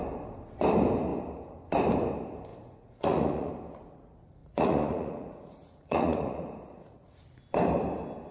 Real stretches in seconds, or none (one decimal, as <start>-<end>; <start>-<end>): 0.0-2.5; 3.5-4.4; 7.2-8.3